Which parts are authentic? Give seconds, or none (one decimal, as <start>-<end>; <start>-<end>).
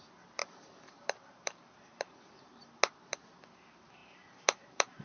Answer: 0.0-0.4; 2.7-4.0